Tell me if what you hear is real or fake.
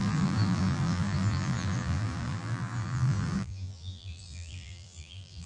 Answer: fake